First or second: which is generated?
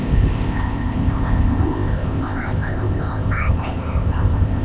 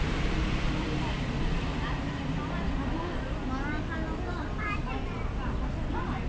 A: first